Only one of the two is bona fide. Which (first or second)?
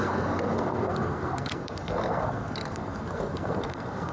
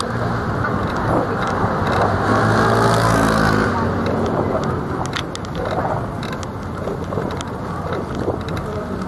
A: second